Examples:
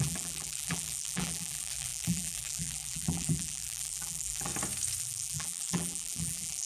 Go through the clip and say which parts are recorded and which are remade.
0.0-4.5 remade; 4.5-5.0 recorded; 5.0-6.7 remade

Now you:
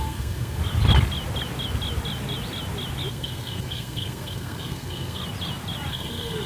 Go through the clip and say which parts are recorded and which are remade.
0.0-0.6 remade; 0.6-3.1 recorded; 3.1-5.2 remade; 5.2-5.9 recorded; 5.9-6.5 remade

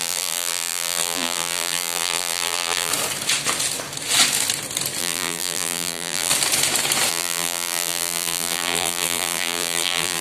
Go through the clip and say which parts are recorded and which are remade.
0.0-2.9 remade; 2.9-5.0 recorded; 5.0-6.3 remade; 6.3-7.1 recorded; 7.1-10.2 remade

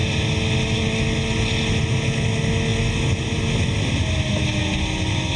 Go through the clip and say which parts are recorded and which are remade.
0.0-5.4 recorded

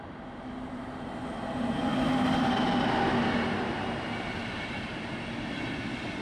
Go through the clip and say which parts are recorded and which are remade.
0.0-6.2 recorded

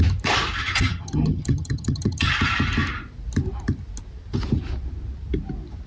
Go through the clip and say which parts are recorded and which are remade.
0.0-0.6 recorded; 0.6-2.3 remade; 2.3-5.9 recorded